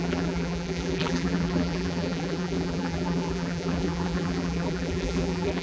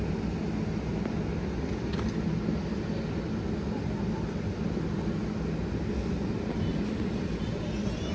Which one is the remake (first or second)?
first